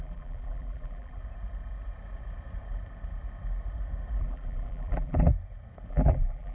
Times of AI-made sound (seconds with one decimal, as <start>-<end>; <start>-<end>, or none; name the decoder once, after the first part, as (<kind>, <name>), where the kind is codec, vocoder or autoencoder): 0.0-1.2 (vocoder, BigVGAN v2); 4.2-5.3; 5.9-6.5